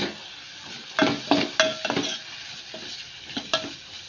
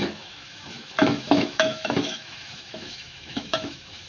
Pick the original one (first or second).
first